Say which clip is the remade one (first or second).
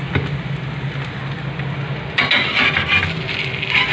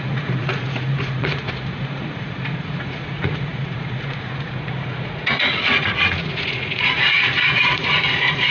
second